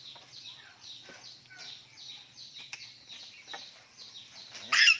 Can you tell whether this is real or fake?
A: real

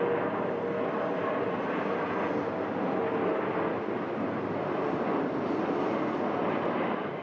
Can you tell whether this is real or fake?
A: real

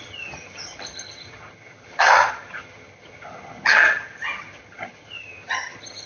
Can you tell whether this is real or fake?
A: fake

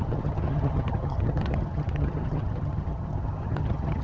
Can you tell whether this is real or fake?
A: fake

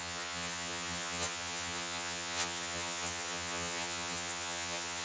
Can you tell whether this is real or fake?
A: fake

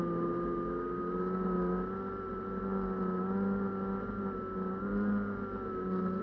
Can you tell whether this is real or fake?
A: real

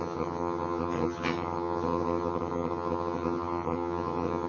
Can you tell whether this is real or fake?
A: fake